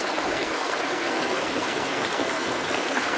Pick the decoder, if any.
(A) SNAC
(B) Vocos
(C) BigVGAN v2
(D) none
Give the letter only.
A